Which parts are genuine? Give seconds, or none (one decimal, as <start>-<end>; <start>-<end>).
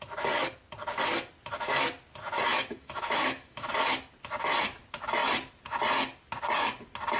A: 0.0-2.5; 3.7-7.2